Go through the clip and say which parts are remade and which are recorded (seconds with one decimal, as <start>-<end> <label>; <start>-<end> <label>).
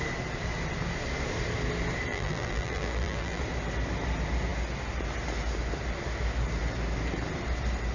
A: 0.0-2.1 recorded; 2.1-3.4 remade; 3.4-7.9 recorded